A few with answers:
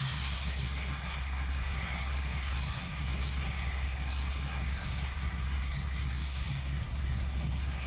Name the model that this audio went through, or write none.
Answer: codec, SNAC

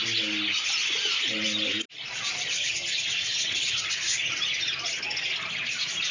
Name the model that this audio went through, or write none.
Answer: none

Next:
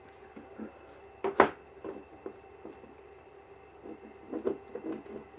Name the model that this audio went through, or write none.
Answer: none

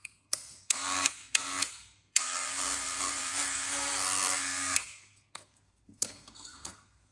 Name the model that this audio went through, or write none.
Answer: codec, SNAC